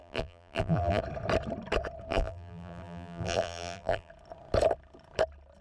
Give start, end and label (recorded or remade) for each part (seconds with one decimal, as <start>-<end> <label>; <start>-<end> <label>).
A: 0.0-1.0 remade; 1.0-2.1 recorded; 2.1-4.1 remade; 4.1-5.6 recorded